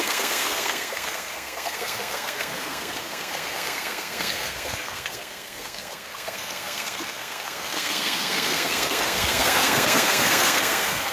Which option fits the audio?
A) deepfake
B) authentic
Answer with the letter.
A